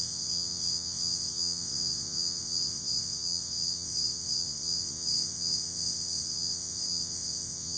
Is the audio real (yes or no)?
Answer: no